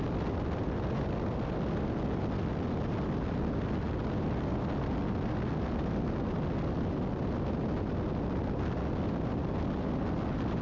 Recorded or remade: recorded